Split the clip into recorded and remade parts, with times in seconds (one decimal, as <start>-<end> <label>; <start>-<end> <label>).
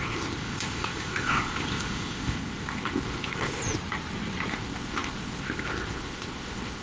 0.0-3.6 remade; 3.6-4.5 recorded; 4.5-6.8 remade